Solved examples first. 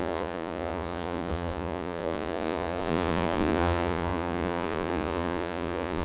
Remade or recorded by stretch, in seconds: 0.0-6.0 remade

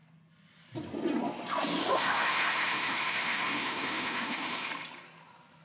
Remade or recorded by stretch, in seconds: 0.0-1.8 recorded; 1.8-4.7 remade; 4.7-5.6 recorded

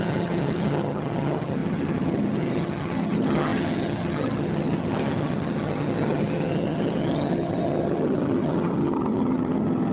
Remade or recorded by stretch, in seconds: 0.0-9.9 remade

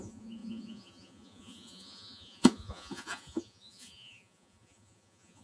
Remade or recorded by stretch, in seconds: 0.0-5.4 remade

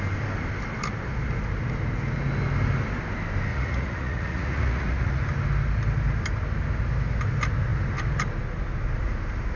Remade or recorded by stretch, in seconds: 0.0-3.5 recorded; 3.5-5.2 remade; 5.2-9.6 recorded

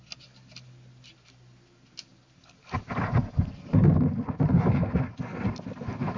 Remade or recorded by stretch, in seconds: 0.0-6.2 recorded